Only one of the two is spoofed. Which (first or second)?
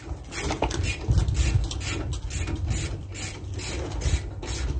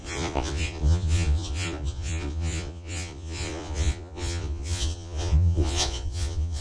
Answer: second